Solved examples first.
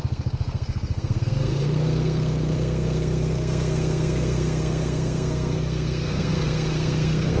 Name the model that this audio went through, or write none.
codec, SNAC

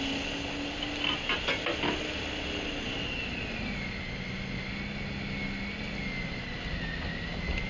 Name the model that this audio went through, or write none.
none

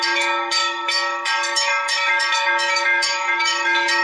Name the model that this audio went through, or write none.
codec, DAC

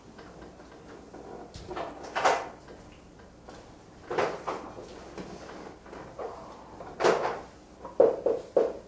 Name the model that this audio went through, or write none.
none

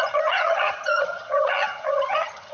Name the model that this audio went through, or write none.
vocoder, HiFi-GAN